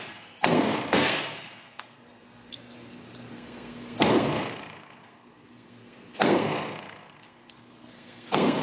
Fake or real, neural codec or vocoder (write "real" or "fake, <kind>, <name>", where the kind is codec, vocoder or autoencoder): fake, codec, SNAC